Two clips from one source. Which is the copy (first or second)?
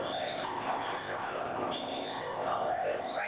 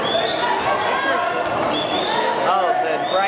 first